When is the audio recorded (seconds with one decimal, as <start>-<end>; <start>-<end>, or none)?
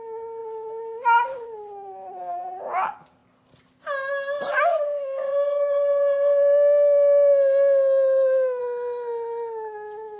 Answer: 0.0-4.7; 8.6-10.2